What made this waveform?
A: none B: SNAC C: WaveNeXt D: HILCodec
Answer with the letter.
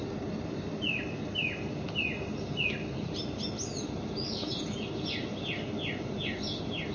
A